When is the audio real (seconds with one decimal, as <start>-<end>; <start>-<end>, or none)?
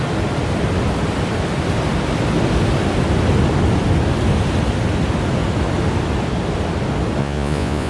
0.0-7.2